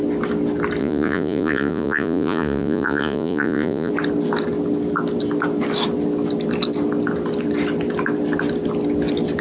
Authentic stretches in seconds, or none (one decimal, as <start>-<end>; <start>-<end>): 0.0-0.8; 3.9-9.4